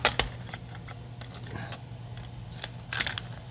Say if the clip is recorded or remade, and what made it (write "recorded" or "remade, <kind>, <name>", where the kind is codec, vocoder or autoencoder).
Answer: recorded